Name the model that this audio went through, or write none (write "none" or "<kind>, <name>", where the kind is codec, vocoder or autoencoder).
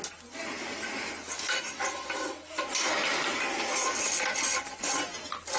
none